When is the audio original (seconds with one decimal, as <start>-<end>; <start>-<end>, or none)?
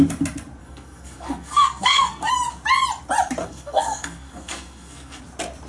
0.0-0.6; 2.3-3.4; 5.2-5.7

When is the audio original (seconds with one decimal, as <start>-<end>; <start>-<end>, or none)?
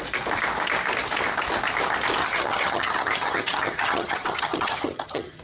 0.0-2.2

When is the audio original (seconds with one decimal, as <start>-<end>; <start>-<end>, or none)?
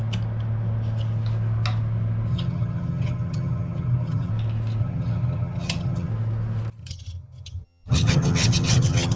0.0-2.3; 4.3-4.8; 6.1-6.8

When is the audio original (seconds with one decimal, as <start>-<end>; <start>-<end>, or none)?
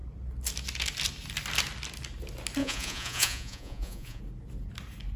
0.0-2.6; 4.2-5.2